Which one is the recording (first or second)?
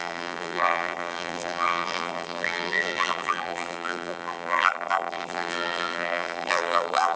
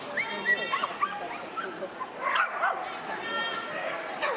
second